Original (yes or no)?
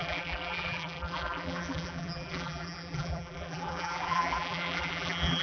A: no